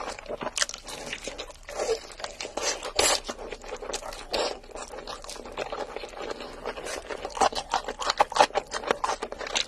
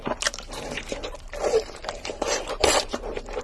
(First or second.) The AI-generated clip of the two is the second